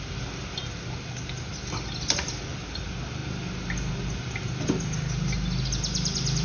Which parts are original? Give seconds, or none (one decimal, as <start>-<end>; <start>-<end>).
0.0-6.4